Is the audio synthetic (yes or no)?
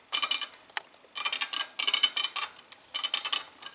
no